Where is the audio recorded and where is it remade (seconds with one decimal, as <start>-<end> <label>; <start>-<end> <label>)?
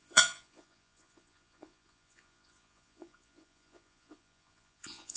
0.0-5.2 remade